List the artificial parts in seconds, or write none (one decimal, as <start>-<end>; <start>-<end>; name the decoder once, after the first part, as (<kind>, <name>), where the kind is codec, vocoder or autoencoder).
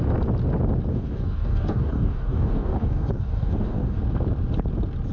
0.9-4.0 (codec, DAC)